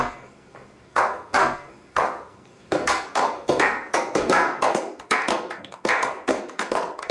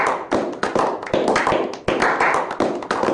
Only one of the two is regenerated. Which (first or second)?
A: first